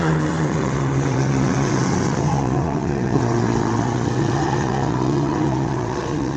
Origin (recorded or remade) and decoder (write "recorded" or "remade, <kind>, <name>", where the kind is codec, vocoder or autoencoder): remade, vocoder, WaveNeXt